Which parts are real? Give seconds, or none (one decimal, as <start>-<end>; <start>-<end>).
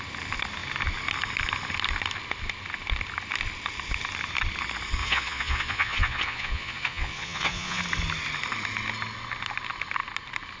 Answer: 0.0-5.0; 7.8-10.6